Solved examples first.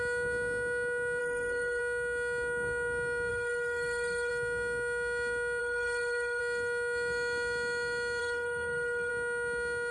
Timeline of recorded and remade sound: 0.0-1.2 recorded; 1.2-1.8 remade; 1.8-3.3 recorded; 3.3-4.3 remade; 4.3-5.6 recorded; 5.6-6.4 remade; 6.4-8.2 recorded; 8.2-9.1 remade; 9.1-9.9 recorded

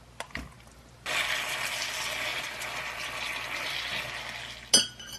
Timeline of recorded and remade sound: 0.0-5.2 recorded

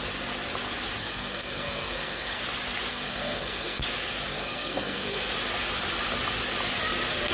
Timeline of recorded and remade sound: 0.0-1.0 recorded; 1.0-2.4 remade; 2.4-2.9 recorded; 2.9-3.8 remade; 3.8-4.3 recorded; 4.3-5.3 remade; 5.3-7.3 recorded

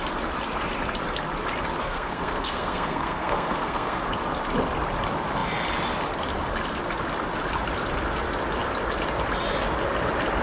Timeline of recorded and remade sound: 0.0-1.8 recorded; 1.8-4.0 remade; 4.0-10.4 recorded

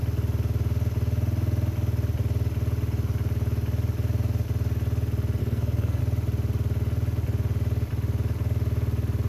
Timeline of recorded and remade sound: 0.0-5.4 recorded; 5.4-6.0 remade; 6.0-9.3 recorded